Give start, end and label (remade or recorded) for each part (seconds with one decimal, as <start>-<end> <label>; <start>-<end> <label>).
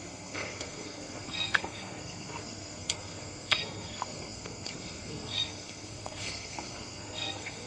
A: 0.0-7.7 remade